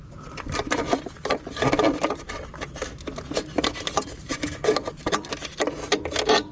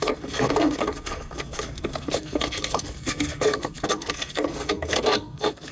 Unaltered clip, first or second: first